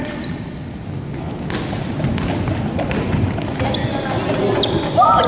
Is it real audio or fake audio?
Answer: real